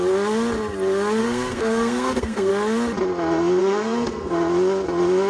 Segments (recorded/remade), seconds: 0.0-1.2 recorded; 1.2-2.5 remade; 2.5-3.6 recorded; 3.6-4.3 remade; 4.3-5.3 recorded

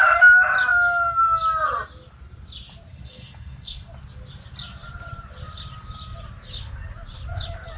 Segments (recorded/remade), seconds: 0.0-2.9 recorded; 2.9-3.9 remade; 3.9-7.8 recorded

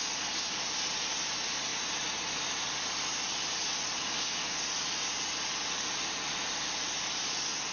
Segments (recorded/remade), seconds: 0.0-7.7 recorded

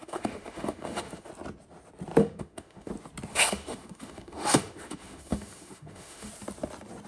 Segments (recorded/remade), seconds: 0.0-1.3 remade; 1.3-2.2 recorded; 2.2-2.9 remade; 2.9-3.3 recorded; 3.3-6.3 remade; 6.3-7.1 recorded

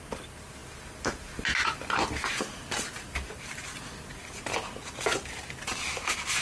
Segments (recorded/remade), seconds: 0.0-6.4 recorded